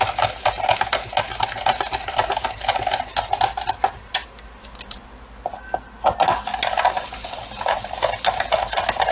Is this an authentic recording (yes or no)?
yes